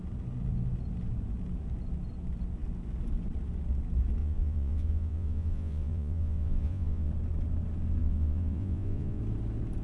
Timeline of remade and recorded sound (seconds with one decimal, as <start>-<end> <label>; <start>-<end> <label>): 0.0-4.2 recorded; 4.2-7.1 remade; 7.1-8.0 recorded; 8.0-9.2 remade; 9.2-9.8 recorded